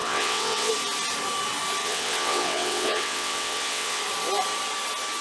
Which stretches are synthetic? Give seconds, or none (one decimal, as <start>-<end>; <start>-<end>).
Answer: 0.0-0.7; 1.8-4.0